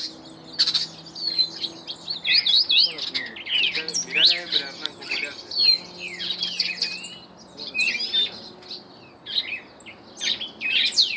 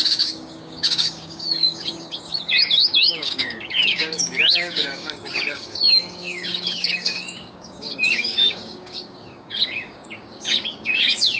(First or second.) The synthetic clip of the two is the second